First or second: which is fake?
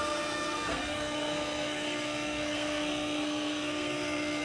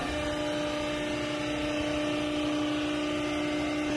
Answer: first